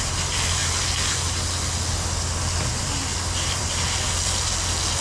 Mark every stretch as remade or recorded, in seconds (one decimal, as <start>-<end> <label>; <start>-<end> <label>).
0.0-5.0 recorded